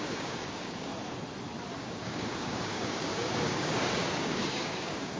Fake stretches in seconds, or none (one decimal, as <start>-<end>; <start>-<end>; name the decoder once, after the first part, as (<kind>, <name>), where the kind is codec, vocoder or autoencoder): 0.0-0.9 (codec, DAC); 1.8-5.2